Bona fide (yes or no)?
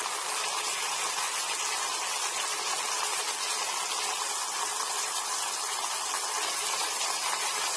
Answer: yes